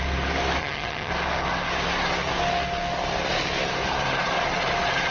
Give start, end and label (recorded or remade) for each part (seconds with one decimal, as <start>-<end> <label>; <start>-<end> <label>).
0.0-0.6 recorded; 0.6-1.1 remade; 1.1-5.1 recorded